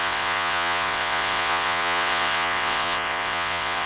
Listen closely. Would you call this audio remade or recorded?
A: remade